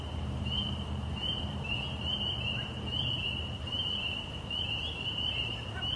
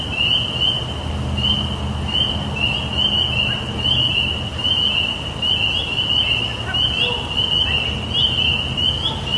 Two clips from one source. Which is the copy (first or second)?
first